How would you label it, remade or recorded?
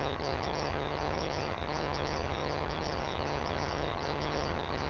remade